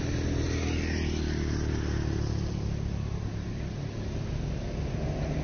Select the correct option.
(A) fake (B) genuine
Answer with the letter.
B